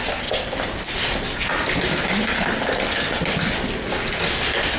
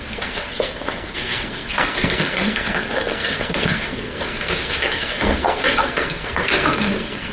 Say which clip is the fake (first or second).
second